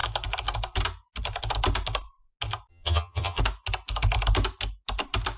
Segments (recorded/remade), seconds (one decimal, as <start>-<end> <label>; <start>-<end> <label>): 0.0-2.7 recorded; 2.7-3.4 remade; 3.4-5.4 recorded